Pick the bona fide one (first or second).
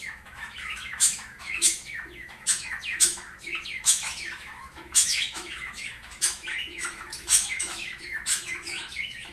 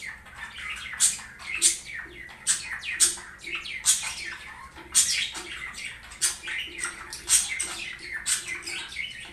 second